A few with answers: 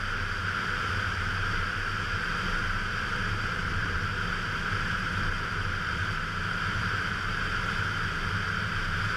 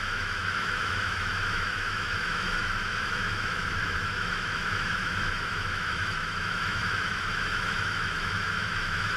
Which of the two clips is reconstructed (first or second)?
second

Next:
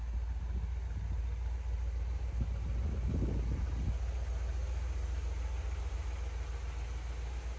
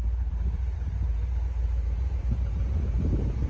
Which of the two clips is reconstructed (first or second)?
second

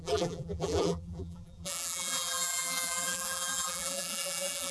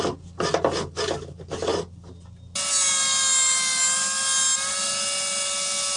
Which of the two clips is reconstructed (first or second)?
first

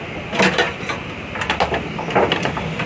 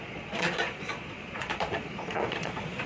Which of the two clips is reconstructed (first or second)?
second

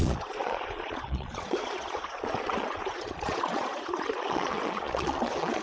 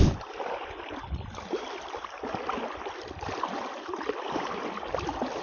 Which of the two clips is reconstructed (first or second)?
first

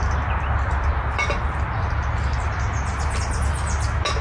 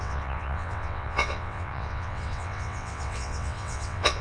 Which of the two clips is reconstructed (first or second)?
second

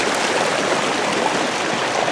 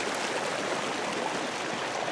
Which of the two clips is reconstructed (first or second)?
first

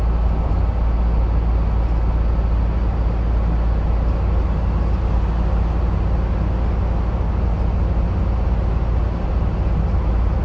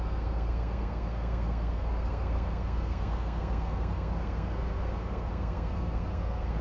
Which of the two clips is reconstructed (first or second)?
second